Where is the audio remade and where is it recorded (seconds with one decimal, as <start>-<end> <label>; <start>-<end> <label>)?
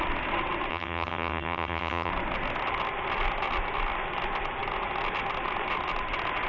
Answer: 0.0-0.7 recorded; 0.7-2.1 remade; 2.1-6.5 recorded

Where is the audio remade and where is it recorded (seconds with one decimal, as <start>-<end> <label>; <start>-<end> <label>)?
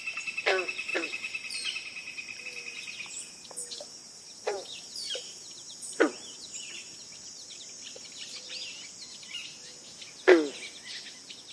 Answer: 0.0-0.9 recorded; 0.9-2.4 remade; 2.4-4.0 recorded; 4.0-8.5 remade; 8.5-11.5 recorded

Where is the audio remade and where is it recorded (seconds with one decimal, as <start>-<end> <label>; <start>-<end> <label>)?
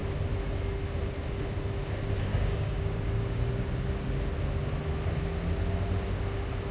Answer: 0.0-2.3 recorded; 2.3-3.5 remade; 3.5-6.7 recorded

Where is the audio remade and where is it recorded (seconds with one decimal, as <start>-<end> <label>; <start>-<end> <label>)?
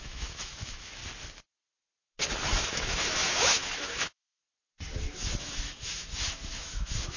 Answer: 0.0-1.0 remade; 1.0-2.7 recorded; 2.7-4.4 remade; 4.4-5.4 recorded; 5.4-7.2 remade